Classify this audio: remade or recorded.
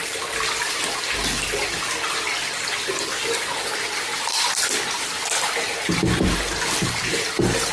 recorded